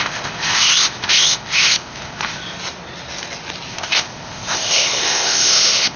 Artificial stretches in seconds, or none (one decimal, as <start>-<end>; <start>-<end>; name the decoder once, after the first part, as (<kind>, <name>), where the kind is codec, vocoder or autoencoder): 0.0-2.4 (codec, ZipCodec); 3.7-6.0